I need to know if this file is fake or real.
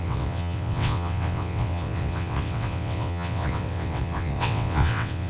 fake